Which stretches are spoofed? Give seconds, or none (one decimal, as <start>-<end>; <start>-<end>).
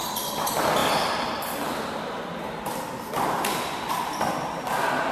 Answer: 0.8-3.9